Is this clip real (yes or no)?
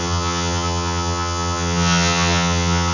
no